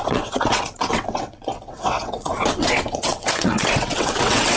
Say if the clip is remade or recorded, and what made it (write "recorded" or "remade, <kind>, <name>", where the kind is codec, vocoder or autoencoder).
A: remade, vocoder, WaveNeXt